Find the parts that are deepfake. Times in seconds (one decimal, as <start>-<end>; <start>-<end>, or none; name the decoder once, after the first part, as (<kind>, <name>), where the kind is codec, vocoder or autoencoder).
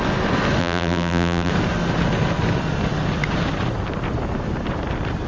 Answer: 0.6-1.5 (vocoder, BigVGAN v2)